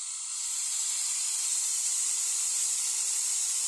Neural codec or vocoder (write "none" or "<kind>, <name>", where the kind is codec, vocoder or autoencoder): vocoder, BigVGAN v2